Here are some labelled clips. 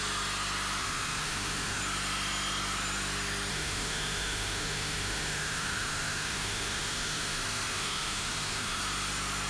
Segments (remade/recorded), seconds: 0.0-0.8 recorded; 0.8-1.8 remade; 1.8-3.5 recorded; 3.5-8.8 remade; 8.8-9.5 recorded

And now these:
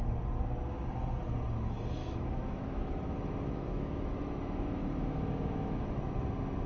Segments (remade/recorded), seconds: 0.0-2.0 recorded; 2.0-6.0 remade; 6.0-6.7 recorded

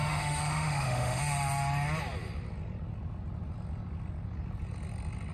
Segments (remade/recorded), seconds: 0.0-1.2 remade; 1.2-5.3 recorded

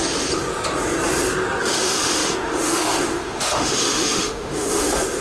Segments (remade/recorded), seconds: 0.0-1.6 recorded; 1.6-5.2 remade

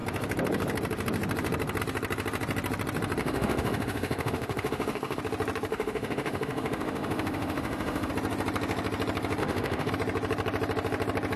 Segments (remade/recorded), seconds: 0.0-3.2 recorded; 3.2-5.2 remade; 5.2-5.7 recorded; 5.7-8.1 remade; 8.1-9.4 recorded; 9.4-9.9 remade; 9.9-11.4 recorded